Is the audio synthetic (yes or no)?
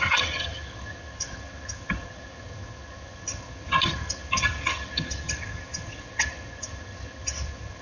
yes